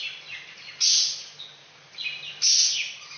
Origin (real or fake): real